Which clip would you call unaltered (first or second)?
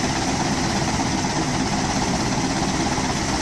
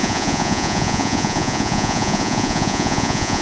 first